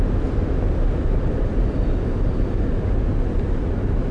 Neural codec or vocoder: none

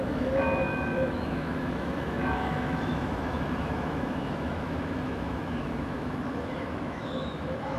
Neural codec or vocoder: autoencoder, DAC-VAE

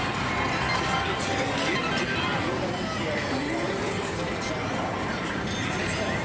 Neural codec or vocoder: none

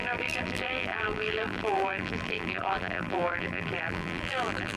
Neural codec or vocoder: vocoder, BigVGAN v2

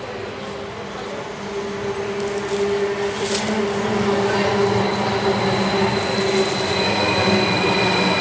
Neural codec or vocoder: none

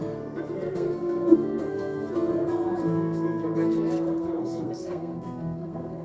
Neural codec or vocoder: codec, SNAC